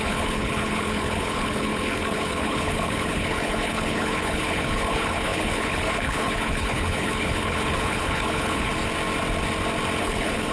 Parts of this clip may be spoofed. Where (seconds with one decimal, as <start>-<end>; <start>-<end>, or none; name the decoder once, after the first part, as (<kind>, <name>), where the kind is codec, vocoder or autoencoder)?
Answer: 0.0-8.7 (codec, HILCodec); 10.0-10.5